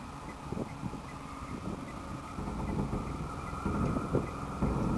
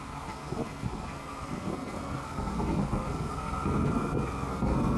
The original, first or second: first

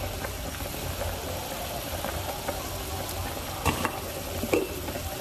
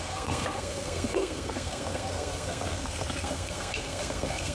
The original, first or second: first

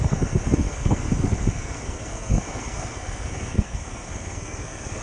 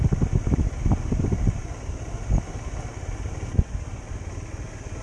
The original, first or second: second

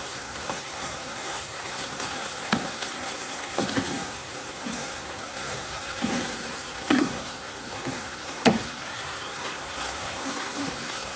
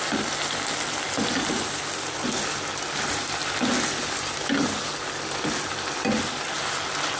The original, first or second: second